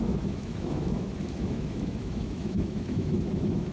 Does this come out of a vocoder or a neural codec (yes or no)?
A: yes